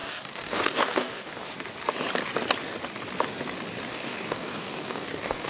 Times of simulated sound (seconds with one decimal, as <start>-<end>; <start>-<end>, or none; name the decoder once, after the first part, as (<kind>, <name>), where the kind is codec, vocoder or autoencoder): 0.0-1.3 (codec, DAC); 3.9-5.5